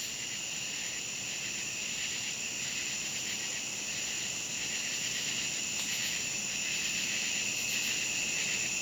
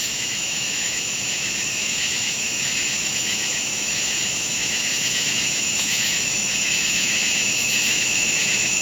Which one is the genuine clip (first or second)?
first